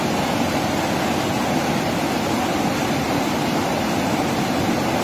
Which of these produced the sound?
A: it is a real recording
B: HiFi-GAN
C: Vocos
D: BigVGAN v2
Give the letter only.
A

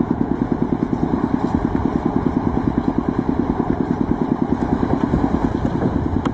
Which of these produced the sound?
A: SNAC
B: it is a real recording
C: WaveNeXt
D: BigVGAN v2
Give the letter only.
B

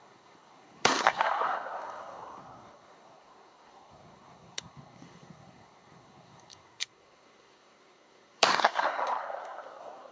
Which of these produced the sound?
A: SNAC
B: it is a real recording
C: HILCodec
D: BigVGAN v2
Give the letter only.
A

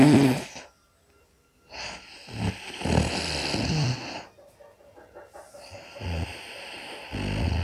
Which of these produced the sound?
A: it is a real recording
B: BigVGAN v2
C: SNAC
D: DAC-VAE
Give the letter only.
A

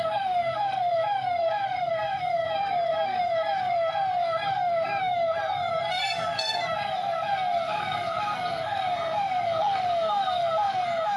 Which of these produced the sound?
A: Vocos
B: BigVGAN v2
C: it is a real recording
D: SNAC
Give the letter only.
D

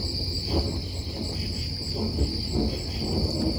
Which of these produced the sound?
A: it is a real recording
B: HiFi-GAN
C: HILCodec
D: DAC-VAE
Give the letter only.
A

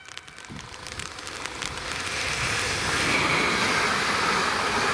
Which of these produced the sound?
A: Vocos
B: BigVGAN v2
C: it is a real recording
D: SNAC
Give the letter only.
C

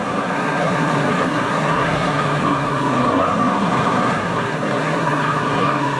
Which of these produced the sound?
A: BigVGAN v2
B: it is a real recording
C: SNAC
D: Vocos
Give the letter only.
C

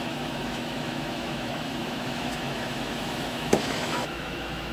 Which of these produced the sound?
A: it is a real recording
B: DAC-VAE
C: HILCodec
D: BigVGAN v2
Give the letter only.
B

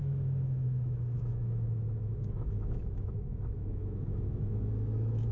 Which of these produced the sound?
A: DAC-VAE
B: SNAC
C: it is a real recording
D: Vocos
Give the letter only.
A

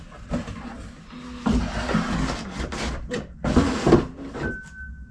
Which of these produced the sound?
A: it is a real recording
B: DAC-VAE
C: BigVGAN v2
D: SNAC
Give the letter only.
A